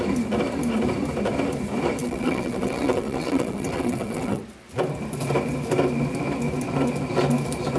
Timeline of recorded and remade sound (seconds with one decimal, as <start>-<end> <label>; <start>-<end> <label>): 0.0-2.0 recorded; 2.0-4.4 remade; 4.4-7.8 recorded